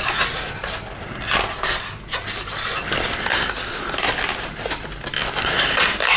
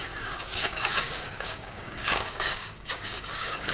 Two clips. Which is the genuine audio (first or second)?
first